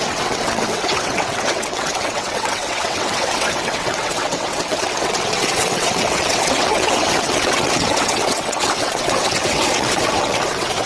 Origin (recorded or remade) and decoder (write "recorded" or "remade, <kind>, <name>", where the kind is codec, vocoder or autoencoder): remade, vocoder, WaveNeXt